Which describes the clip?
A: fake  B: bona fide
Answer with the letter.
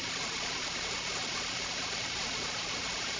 A